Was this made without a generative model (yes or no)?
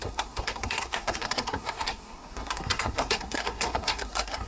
no